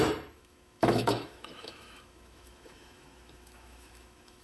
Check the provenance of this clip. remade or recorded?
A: remade